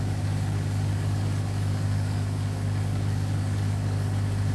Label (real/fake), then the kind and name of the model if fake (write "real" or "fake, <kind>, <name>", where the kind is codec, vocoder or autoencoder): fake, codec, DAC